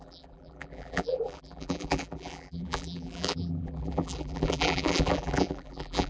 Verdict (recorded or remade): remade